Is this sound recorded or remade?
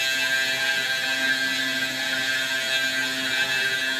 recorded